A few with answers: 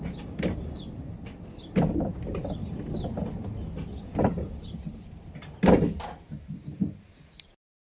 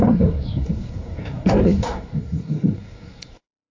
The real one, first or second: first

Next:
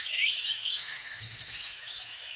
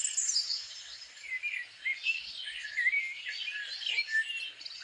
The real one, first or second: second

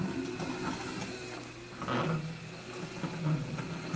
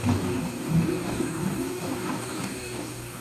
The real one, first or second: first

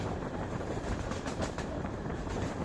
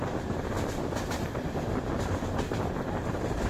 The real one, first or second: second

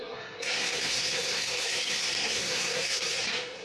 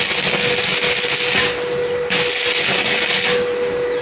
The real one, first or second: second